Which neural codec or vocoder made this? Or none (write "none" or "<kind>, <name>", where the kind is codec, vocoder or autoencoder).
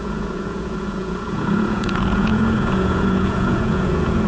vocoder, Vocos